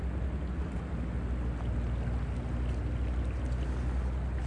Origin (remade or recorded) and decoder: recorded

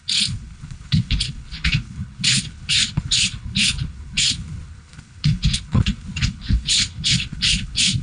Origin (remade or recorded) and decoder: remade, codec, HILCodec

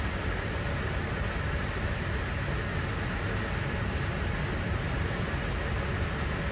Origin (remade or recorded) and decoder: recorded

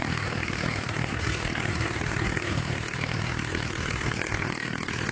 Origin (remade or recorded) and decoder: remade, codec, SNAC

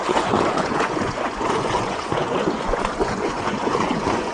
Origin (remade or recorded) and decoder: remade, vocoder, Vocos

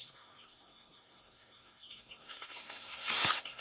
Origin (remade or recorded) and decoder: remade, codec, SNAC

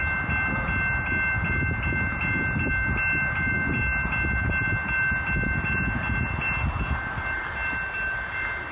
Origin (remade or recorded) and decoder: recorded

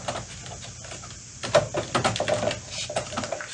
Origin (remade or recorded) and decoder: recorded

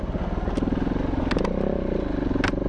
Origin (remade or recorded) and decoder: recorded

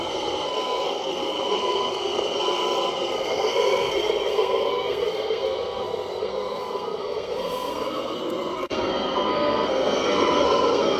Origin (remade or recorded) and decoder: remade, codec, SNAC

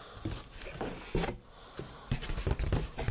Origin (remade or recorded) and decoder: recorded